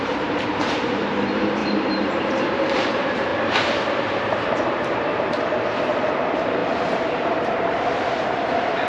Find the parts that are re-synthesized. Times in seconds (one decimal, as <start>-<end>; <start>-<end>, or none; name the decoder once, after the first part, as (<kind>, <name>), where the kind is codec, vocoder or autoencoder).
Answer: 0.0-8.9 (vocoder, BigVGAN v2)